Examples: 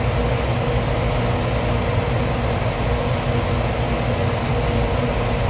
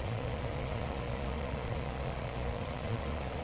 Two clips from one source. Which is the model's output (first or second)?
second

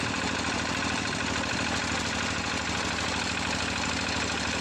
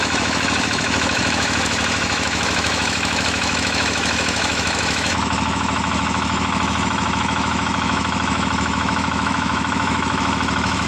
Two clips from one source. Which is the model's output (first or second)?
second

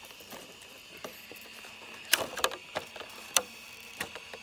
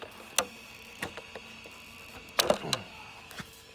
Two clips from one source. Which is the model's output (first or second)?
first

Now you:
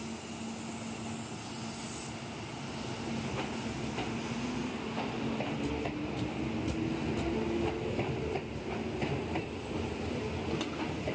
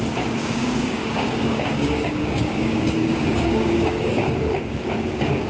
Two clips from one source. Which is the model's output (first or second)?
second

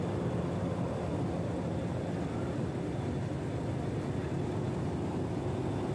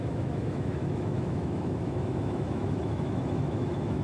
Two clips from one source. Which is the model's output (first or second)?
second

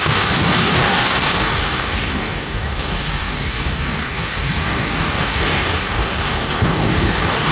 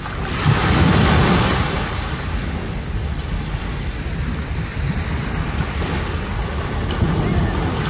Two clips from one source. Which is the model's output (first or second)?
first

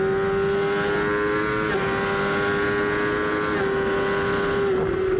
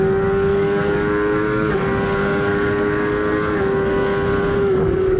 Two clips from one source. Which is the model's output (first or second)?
second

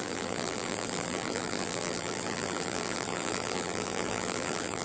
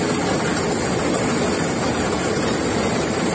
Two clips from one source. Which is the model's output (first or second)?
first